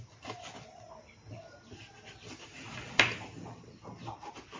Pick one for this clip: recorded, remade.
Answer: recorded